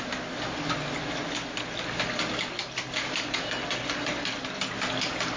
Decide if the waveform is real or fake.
real